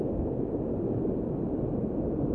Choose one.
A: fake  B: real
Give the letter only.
B